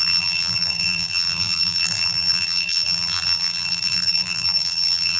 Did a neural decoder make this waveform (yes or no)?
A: yes